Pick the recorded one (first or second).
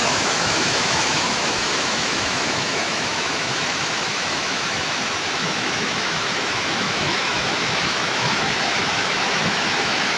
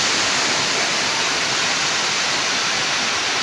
second